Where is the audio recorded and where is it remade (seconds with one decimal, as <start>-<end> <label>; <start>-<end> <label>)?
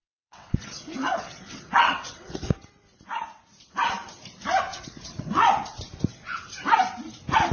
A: 0.0-2.5 remade; 2.5-4.7 recorded; 4.7-5.5 remade; 5.5-7.5 recorded